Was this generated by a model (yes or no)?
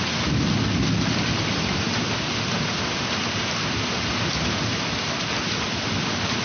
no